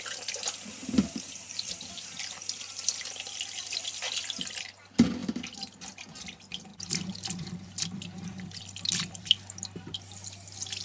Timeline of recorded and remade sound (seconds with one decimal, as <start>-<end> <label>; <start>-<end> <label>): 0.0-0.8 recorded; 0.8-4.7 remade; 4.7-6.7 recorded; 6.7-10.3 remade; 10.3-10.8 recorded